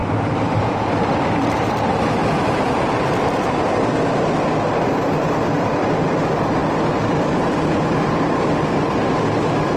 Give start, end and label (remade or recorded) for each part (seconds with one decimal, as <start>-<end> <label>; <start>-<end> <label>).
0.0-1.7 remade; 1.7-2.2 recorded; 2.2-4.3 remade; 4.3-9.8 recorded